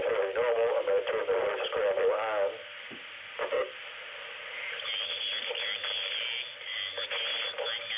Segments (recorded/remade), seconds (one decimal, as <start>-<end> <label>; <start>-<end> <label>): 0.0-6.7 remade; 6.7-8.0 recorded